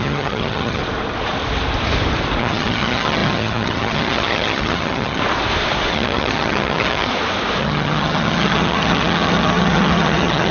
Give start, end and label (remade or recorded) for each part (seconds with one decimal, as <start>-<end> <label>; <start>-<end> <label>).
0.0-0.8 remade; 0.8-2.4 recorded; 2.4-5.2 remade; 5.2-5.9 recorded; 5.9-7.1 remade; 7.1-7.6 recorded; 7.6-10.5 remade